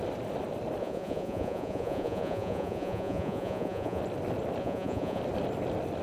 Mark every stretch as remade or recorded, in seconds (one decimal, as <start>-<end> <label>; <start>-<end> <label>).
0.0-0.8 recorded; 0.8-4.0 remade; 4.0-4.6 recorded; 4.6-5.2 remade; 5.2-6.0 recorded